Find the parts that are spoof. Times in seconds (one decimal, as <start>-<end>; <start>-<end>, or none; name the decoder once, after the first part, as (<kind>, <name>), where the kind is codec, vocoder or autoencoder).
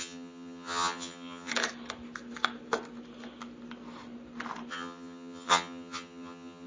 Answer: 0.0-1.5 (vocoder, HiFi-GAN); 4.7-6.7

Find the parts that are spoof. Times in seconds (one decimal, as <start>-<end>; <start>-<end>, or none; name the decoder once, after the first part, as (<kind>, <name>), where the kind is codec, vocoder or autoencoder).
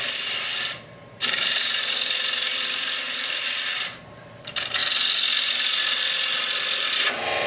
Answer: 0.0-7.5 (vocoder, BigVGAN v2)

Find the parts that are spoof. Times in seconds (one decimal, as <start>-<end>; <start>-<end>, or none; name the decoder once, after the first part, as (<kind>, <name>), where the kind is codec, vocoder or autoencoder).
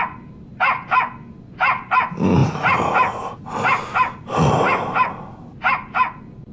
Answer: none